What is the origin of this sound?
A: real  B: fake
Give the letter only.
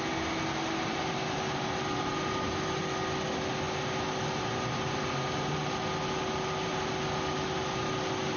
A